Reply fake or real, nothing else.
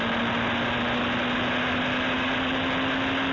real